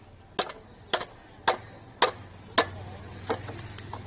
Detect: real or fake real